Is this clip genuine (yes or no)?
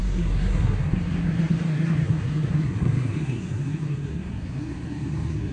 no